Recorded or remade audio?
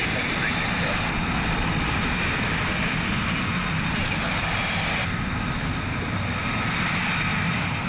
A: recorded